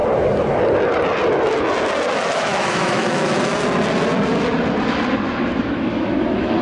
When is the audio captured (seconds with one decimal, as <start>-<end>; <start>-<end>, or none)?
0.0-2.1; 3.5-5.6